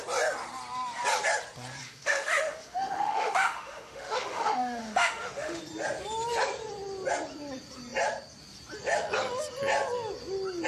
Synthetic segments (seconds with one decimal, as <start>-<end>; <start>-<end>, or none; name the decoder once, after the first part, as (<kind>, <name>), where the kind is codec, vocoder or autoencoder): 1.8-5.6 (autoencoder, DAC-VAE)